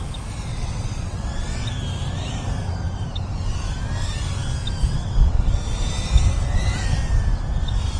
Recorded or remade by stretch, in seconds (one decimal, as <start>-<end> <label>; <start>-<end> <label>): 0.0-0.5 recorded; 0.5-1.7 remade; 1.7-4.8 recorded; 4.8-5.4 remade; 5.4-8.0 recorded